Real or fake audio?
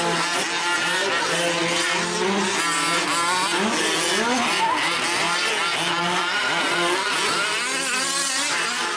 real